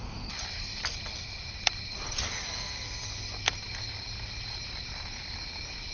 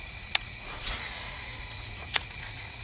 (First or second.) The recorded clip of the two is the first